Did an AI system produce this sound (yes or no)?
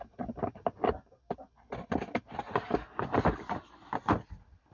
no